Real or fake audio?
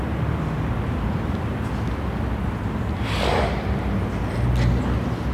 real